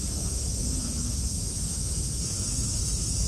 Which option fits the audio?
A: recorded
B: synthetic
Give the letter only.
B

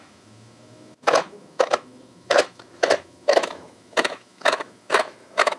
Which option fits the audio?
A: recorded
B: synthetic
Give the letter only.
B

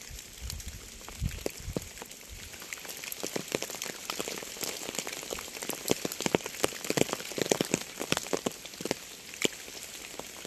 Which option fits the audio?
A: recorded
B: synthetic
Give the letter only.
A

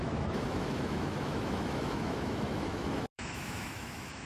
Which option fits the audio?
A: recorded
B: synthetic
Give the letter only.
B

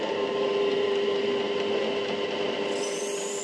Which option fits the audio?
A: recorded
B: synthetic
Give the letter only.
A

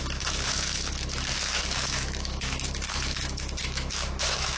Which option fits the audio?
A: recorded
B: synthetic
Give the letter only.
B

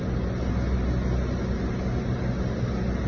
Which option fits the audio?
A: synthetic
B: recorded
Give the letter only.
B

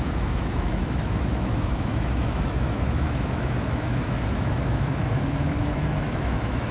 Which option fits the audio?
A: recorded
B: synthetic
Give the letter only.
B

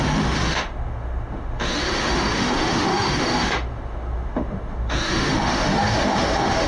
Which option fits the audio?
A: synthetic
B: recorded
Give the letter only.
A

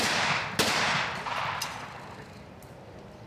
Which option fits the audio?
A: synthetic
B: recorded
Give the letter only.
B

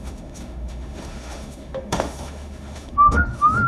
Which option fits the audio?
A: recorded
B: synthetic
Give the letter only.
B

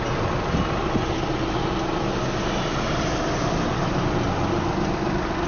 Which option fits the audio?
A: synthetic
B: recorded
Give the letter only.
B